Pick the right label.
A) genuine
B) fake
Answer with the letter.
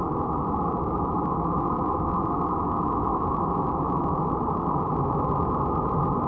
A